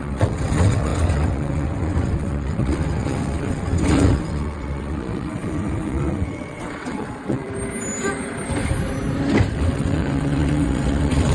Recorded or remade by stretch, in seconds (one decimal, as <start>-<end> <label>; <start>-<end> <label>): 0.0-7.5 remade; 7.5-9.5 recorded; 9.5-11.3 remade

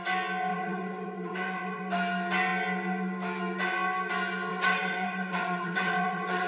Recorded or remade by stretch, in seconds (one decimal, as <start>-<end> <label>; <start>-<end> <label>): 0.0-0.5 recorded; 0.5-1.8 remade; 1.8-4.5 recorded; 4.5-6.5 remade

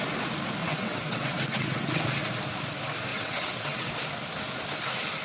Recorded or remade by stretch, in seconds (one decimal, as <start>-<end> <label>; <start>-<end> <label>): 0.0-0.6 recorded; 0.6-2.2 remade; 2.2-3.1 recorded; 3.1-3.9 remade; 3.9-5.2 recorded